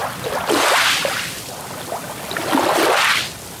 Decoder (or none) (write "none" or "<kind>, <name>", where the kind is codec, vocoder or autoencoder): none